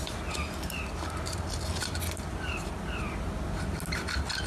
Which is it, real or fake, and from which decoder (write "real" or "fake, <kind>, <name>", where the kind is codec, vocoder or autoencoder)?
real